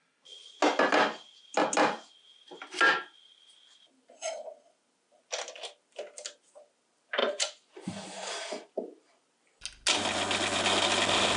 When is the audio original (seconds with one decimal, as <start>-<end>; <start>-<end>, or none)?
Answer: 0.0-7.2; 7.7-11.4